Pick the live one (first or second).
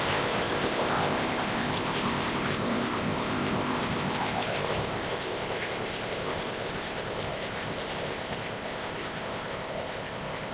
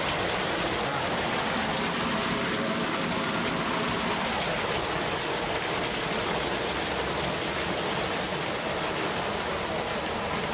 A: second